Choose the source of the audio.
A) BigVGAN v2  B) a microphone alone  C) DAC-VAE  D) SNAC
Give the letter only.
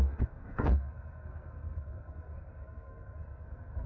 D